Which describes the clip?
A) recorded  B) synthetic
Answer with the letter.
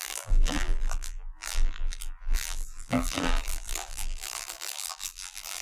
B